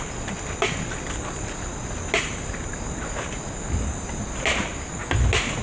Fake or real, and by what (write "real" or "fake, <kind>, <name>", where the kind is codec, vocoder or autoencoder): real